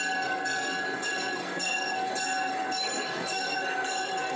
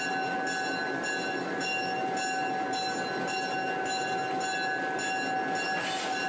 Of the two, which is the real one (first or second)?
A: second